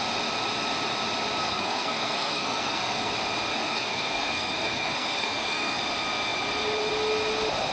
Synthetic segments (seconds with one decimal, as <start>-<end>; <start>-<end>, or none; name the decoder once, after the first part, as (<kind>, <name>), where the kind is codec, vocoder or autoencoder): 1.4-3.1 (codec, SNAC); 3.5-5.8